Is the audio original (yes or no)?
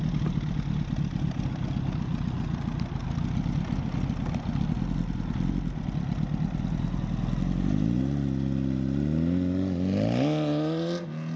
yes